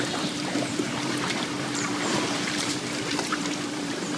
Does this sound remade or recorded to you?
remade